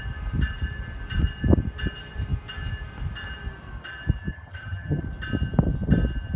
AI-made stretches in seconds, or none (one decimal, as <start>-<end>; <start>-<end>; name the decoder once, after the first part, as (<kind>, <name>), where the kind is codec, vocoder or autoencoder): 4.3-5.0 (vocoder, HiFi-GAN)